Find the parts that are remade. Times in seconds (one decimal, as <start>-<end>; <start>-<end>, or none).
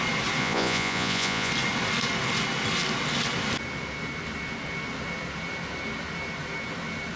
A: 0.4-1.5